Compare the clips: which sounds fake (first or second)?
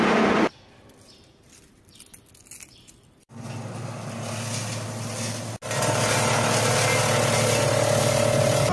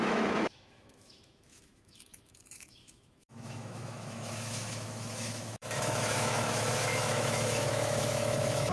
second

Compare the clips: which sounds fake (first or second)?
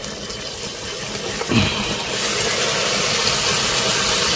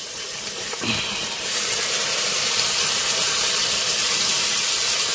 second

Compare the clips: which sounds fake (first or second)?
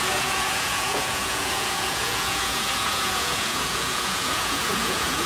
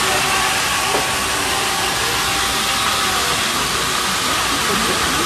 first